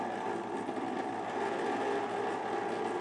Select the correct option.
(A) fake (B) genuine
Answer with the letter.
B